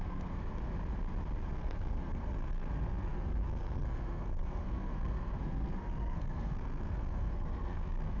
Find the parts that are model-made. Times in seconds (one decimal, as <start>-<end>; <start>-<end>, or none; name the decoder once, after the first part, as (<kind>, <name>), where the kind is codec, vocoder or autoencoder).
0.0-0.5 (codec, SNAC); 1.5-8.2